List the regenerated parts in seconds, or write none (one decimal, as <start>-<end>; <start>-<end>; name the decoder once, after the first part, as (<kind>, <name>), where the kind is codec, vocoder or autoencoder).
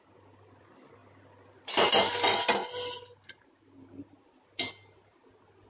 none